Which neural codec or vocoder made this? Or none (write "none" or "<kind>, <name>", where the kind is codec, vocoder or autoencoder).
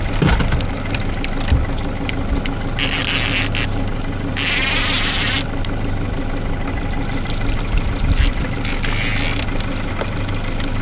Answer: none